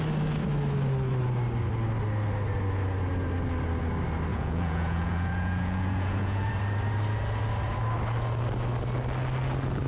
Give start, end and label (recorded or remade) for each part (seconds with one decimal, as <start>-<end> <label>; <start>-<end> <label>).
0.0-4.3 recorded; 4.3-6.5 remade; 6.5-9.9 recorded